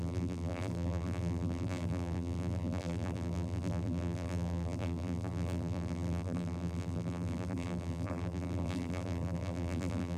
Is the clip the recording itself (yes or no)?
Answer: no